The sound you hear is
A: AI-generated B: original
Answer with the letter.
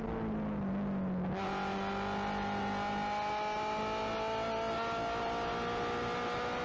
B